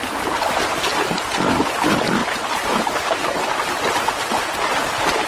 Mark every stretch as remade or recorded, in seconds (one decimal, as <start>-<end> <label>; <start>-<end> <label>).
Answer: 0.0-2.2 recorded; 2.2-3.1 remade; 3.1-5.3 recorded